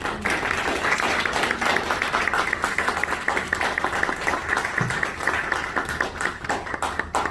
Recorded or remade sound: recorded